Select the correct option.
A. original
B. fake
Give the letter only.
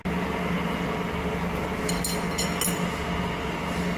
A